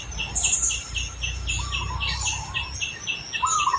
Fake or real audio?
real